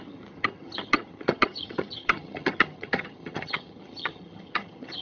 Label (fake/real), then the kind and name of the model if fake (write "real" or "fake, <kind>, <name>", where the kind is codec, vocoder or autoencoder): fake, vocoder, HiFi-GAN